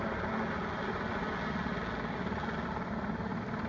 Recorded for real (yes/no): yes